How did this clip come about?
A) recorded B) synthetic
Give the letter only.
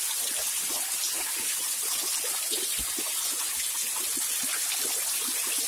A